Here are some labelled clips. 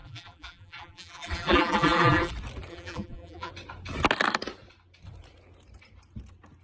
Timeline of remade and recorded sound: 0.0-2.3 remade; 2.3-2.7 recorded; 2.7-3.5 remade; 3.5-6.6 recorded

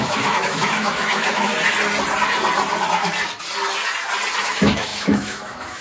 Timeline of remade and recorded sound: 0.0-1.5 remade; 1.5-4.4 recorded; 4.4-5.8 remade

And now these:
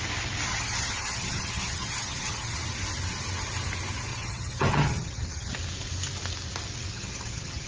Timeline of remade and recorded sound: 0.0-0.5 recorded; 0.5-2.6 remade; 2.6-4.1 recorded; 4.1-5.5 remade; 5.5-6.9 recorded; 6.9-7.7 remade

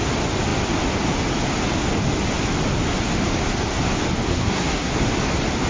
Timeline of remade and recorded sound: 0.0-4.3 recorded; 4.3-4.9 remade; 4.9-5.7 recorded

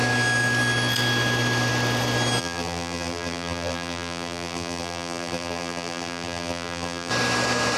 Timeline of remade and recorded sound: 0.0-2.4 recorded; 2.4-7.1 remade; 7.1-7.8 recorded

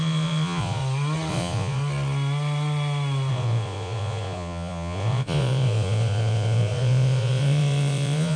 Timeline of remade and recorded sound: 0.0-0.8 remade; 0.8-1.3 recorded; 1.3-1.8 remade; 1.8-3.3 recorded; 3.3-8.4 remade

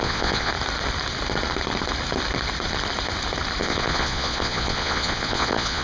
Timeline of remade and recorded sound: 0.0-0.5 remade; 0.5-3.6 recorded; 3.6-5.8 remade

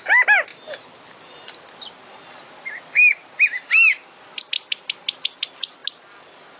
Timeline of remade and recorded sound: 0.0-6.6 recorded